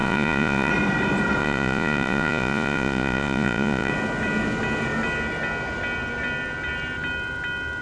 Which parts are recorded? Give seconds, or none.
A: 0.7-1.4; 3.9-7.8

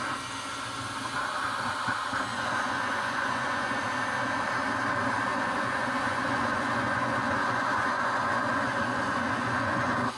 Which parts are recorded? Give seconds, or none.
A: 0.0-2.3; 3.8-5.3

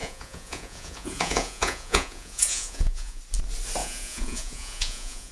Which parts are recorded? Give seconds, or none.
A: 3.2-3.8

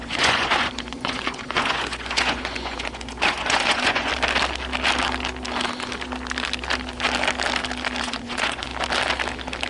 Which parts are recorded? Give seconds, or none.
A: 4.1-8.0; 8.7-9.7